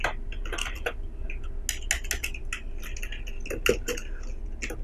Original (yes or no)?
yes